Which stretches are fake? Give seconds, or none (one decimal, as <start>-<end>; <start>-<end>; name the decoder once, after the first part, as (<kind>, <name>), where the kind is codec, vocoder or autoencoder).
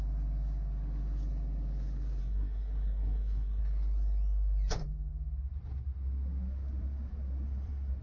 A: 2.2-3.6 (codec, SNAC)